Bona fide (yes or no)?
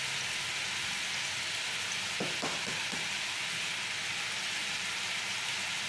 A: yes